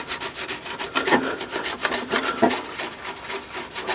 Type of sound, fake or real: real